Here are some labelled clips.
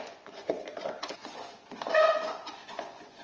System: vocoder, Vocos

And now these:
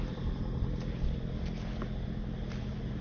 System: none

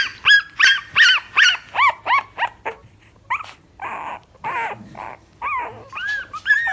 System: none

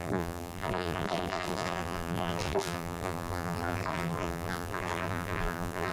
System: vocoder, BigVGAN v2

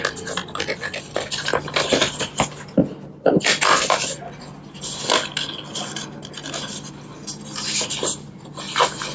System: none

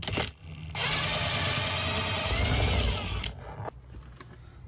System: none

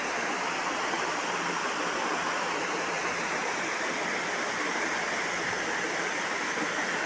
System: none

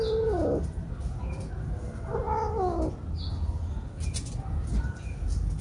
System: none